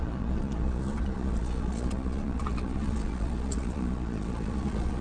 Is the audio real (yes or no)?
no